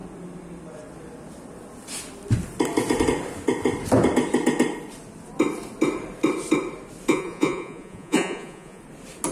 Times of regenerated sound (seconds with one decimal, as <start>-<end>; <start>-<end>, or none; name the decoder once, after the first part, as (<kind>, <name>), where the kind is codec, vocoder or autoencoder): 7.1-8.8 (vocoder, Vocos)